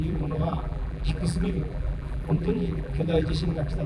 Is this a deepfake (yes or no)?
yes